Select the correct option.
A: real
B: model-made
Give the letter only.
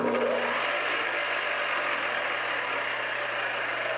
A